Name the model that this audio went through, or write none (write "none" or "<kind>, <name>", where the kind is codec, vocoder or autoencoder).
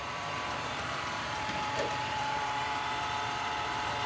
vocoder, BigVGAN v2